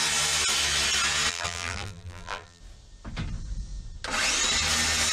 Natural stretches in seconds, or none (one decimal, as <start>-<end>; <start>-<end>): 0.0-1.3; 2.6-5.1

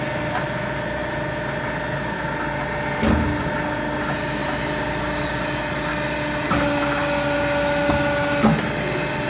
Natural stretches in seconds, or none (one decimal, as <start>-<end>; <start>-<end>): 0.0-4.4; 5.0-9.3

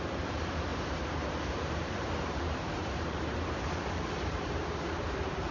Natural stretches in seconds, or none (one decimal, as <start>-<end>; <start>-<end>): none